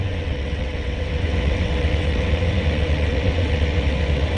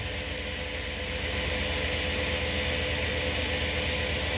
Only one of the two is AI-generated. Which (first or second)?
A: first